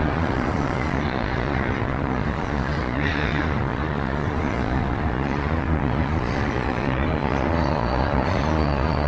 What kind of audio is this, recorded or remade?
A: remade